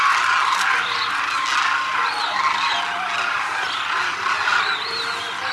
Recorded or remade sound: recorded